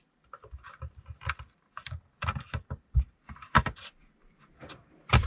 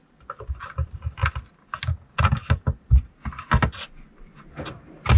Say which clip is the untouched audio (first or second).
second